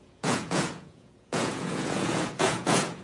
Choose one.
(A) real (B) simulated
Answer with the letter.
B